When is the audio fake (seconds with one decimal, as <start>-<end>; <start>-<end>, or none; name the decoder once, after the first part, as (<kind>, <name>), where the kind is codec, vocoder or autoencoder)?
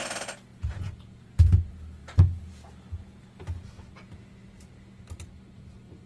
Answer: 0.5-1.6 (vocoder, Vocos)